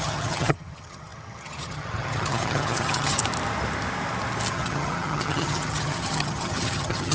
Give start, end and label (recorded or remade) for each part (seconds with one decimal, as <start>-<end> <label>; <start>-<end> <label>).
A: 0.0-3.2 remade; 3.2-4.5 recorded; 4.5-7.1 remade